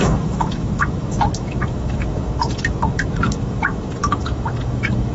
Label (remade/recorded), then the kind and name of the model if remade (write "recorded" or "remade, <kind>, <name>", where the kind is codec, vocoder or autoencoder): remade, autoencoder, DAC-VAE